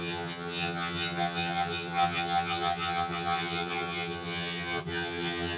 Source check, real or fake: fake